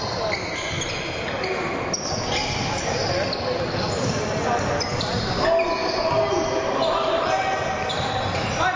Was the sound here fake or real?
real